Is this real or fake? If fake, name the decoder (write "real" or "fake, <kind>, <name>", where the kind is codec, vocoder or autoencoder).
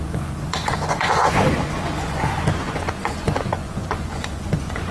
fake, vocoder, Vocos